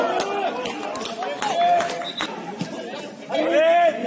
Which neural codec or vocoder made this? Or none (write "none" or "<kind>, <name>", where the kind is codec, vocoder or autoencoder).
none